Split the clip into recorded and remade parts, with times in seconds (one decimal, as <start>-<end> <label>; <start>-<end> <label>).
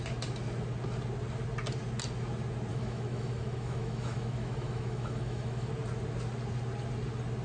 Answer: 0.0-2.7 recorded; 2.7-5.7 remade; 5.7-7.4 recorded